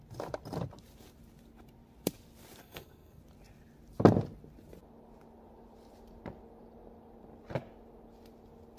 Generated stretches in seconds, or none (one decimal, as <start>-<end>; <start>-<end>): 2.6-3.2